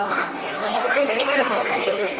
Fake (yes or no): yes